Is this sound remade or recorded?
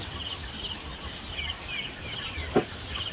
recorded